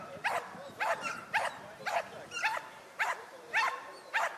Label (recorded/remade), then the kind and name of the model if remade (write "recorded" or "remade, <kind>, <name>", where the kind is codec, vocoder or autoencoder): recorded